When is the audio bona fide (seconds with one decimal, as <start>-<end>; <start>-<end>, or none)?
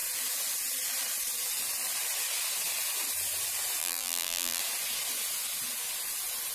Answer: 0.0-3.8; 4.6-6.5